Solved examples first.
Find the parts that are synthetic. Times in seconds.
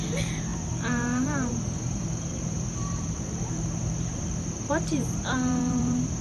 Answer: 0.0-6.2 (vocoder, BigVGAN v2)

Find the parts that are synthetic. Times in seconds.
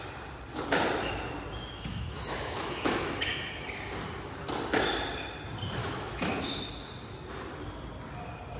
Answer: 1.9-3.3 (autoencoder, DAC-VAE); 5.8-6.7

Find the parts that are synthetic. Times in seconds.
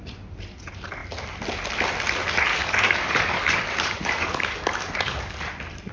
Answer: 2.5-5.4 (codec, DAC)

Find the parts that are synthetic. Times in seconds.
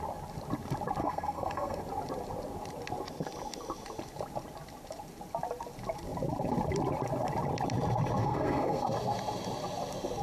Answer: 1.0-1.8 (codec, SNAC); 8.2-8.8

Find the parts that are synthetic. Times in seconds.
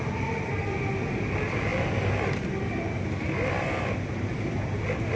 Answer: none